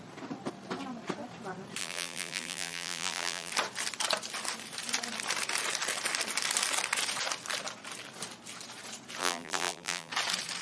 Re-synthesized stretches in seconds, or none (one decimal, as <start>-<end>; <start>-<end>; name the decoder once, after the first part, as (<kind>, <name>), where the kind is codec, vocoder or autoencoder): 1.8-3.5 (vocoder, BigVGAN v2); 9.2-10.1